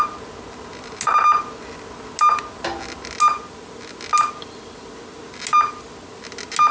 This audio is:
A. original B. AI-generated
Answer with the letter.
A